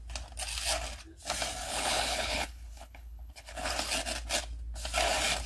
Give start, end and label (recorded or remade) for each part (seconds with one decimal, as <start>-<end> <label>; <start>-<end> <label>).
0.0-1.6 recorded; 1.6-3.7 remade; 3.7-5.5 recorded